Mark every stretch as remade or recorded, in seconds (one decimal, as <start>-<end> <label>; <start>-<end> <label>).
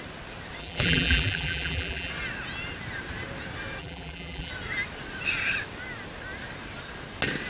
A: 0.0-0.6 recorded; 0.6-2.1 remade; 2.1-3.8 recorded; 3.8-4.5 remade; 4.5-7.5 recorded